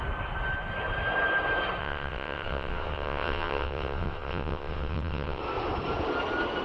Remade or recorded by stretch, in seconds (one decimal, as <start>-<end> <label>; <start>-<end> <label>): 0.0-1.8 recorded; 1.8-5.4 remade; 5.4-6.6 recorded